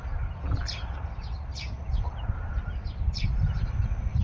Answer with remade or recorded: recorded